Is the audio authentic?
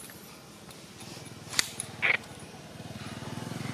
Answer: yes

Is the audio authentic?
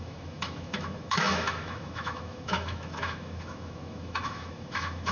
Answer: no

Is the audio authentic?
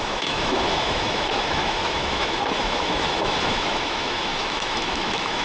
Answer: no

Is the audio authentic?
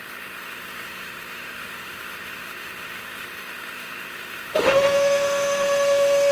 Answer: no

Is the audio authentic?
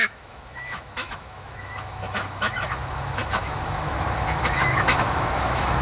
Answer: no